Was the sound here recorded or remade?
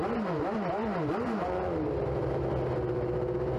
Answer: recorded